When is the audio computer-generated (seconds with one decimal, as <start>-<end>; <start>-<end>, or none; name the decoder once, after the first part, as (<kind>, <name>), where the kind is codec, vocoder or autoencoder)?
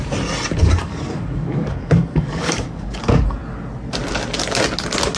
0.6-3.0 (codec, DAC)